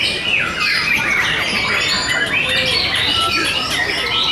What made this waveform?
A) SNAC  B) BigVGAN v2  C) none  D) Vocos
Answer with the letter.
C